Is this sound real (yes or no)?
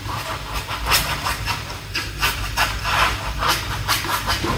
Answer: no